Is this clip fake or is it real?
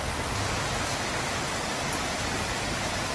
real